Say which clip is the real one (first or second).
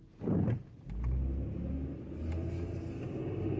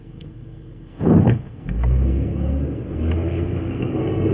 first